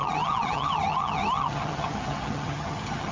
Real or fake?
fake